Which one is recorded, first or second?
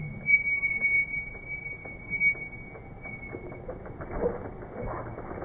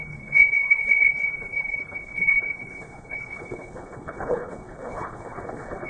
first